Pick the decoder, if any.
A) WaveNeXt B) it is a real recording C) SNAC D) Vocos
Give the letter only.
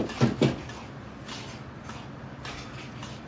B